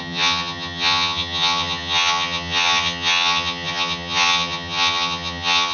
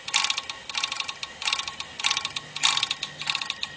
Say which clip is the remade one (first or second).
first